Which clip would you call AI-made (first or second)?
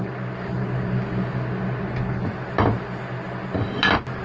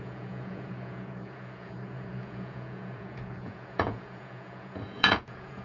second